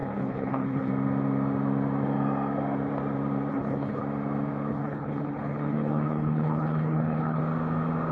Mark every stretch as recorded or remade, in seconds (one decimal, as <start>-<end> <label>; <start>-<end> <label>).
0.0-0.9 remade; 0.9-3.5 recorded; 3.5-4.0 remade; 4.0-4.7 recorded; 4.7-7.4 remade; 7.4-8.1 recorded